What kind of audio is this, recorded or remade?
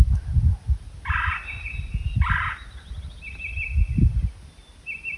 recorded